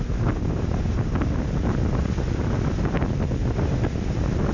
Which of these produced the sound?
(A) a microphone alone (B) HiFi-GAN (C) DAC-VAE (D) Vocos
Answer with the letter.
A